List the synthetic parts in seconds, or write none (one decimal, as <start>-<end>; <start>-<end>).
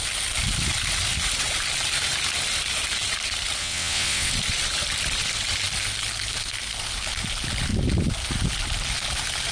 3.6-4.3